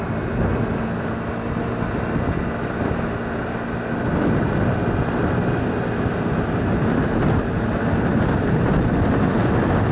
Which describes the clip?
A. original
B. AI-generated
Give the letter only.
A